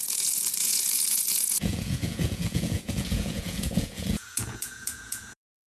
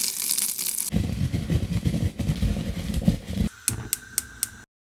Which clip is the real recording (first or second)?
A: second